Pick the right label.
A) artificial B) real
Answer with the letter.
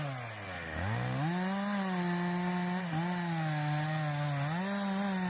B